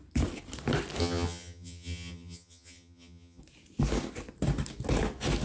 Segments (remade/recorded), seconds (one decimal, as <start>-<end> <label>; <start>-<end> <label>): 0.0-1.0 recorded; 1.0-3.4 remade; 3.4-5.4 recorded